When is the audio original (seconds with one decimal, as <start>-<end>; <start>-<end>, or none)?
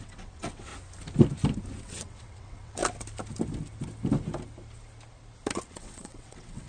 0.7-1.8; 2.8-5.7